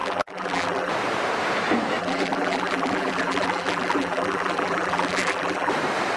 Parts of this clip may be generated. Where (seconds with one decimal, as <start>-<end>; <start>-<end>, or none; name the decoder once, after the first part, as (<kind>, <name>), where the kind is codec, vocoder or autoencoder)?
0.0-0.9 (vocoder, BigVGAN v2); 2.0-5.7